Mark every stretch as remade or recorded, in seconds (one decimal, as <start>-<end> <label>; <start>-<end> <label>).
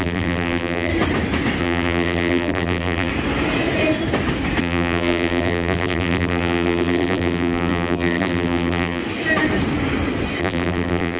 0.0-0.9 remade; 0.9-1.6 recorded; 1.6-3.1 remade; 3.1-4.6 recorded; 4.6-9.0 remade; 9.0-10.4 recorded; 10.4-11.2 remade